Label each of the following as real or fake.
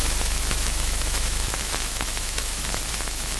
fake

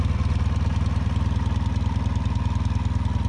real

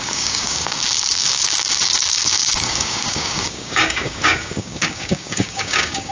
fake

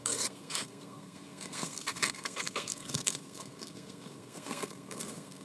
fake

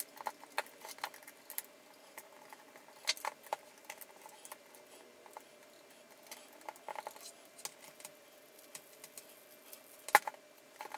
real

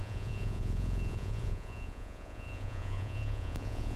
fake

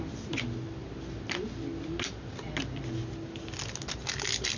real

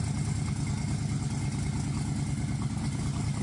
real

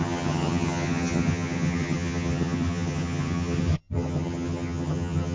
fake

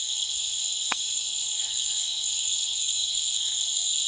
fake